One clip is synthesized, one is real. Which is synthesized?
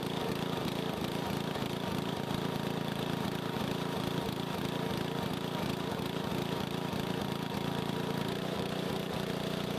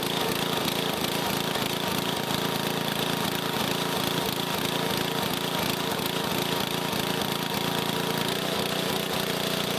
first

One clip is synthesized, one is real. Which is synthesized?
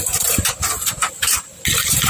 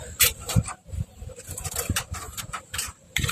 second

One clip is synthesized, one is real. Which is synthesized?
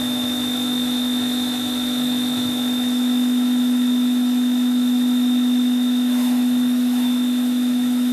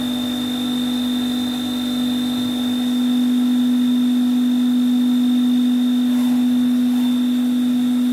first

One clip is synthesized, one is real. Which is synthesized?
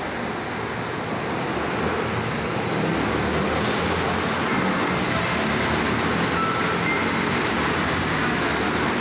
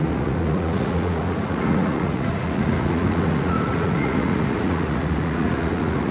second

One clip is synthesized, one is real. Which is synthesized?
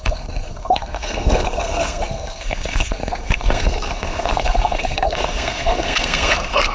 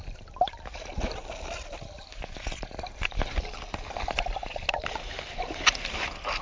first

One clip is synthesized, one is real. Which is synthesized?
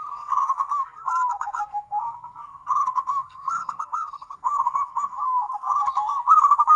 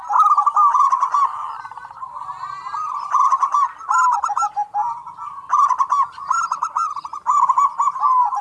first